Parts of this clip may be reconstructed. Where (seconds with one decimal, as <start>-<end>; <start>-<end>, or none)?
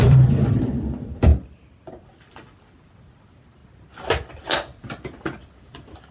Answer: 0.0-1.3; 2.3-3.6; 4.3-6.1